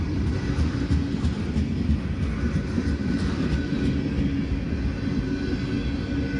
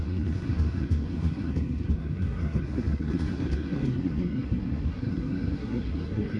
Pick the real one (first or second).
first